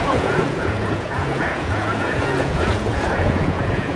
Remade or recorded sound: remade